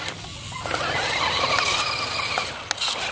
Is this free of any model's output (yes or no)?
yes